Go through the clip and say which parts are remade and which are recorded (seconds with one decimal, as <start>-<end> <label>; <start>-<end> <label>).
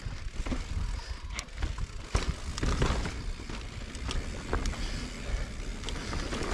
0.0-6.5 recorded